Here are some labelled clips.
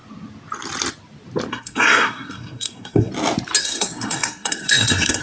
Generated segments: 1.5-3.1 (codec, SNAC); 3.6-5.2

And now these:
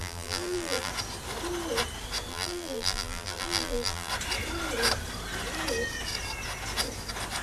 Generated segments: 0.0-0.9 (vocoder, BigVGAN v2); 2.3-4.1

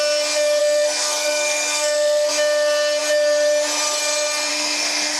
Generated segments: 0.6-2.3 (codec, SNAC); 4.5-5.2

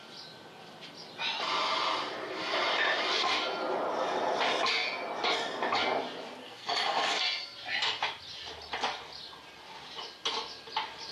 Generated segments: 6.4-7.2 (codec, SNAC)

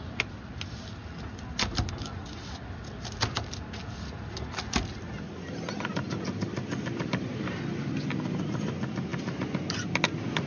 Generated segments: none

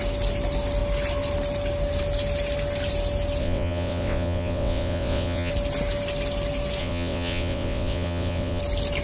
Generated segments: 3.4-5.5 (vocoder, WaveNeXt); 6.8-8.6